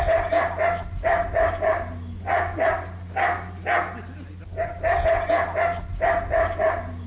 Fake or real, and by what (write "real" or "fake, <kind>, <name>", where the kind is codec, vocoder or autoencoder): real